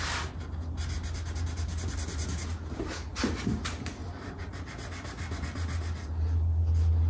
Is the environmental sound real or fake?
real